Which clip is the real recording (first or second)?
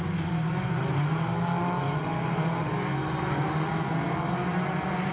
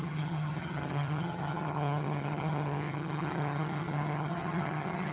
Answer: first